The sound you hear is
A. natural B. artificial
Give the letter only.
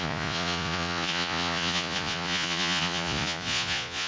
B